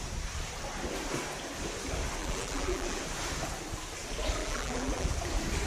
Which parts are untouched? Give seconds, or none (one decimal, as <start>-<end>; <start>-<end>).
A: 0.0-2.2; 3.0-4.4; 5.1-5.7